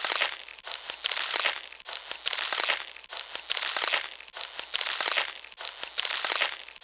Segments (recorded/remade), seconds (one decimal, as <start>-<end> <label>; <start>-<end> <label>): 0.0-0.5 recorded; 0.5-1.3 remade; 1.3-6.8 recorded

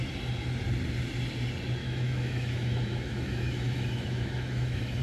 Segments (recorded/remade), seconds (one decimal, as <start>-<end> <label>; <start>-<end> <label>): 0.0-1.8 recorded; 1.8-5.0 remade

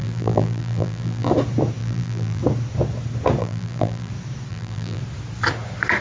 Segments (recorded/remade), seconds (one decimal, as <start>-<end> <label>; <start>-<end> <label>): 0.0-1.3 remade; 1.3-1.8 recorded; 1.8-2.4 remade; 2.4-3.4 recorded; 3.4-4.1 remade; 4.1-4.5 recorded; 4.5-5.0 remade; 5.0-6.0 recorded